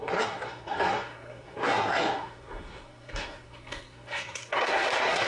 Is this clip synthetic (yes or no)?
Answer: yes